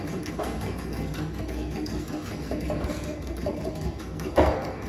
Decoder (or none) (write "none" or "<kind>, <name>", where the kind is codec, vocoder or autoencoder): codec, SNAC